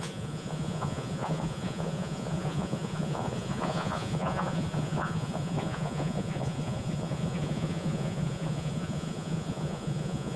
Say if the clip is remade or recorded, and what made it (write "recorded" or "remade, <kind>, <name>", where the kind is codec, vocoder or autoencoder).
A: remade, vocoder, Vocos